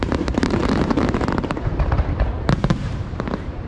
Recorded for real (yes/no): no